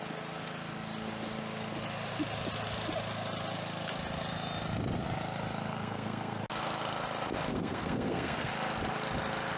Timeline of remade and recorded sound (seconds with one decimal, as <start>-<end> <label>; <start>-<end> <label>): 0.0-5.7 recorded; 5.7-6.4 remade; 6.4-7.5 recorded; 7.5-8.5 remade; 8.5-9.6 recorded